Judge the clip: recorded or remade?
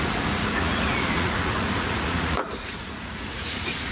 remade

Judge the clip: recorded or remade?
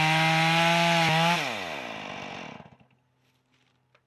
recorded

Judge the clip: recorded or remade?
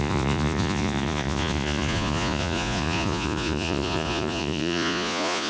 remade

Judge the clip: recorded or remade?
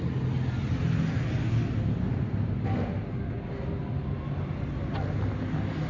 recorded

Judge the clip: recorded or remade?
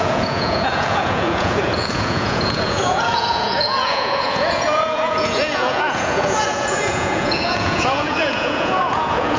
remade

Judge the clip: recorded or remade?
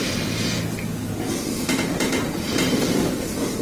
recorded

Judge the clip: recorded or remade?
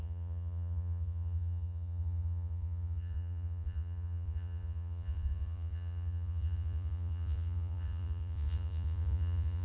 remade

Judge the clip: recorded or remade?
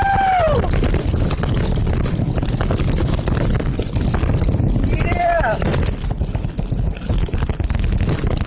recorded